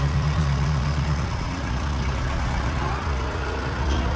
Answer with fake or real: fake